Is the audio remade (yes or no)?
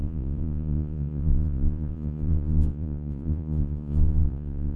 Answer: yes